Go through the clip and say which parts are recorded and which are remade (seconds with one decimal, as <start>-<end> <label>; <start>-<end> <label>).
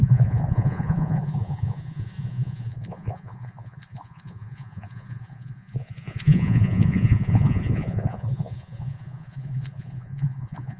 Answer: 0.0-10.8 remade